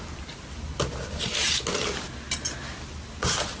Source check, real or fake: real